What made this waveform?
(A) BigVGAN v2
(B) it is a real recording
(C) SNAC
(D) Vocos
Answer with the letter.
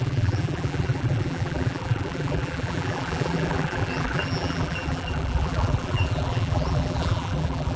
A